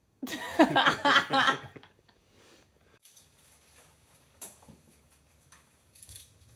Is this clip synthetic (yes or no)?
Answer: yes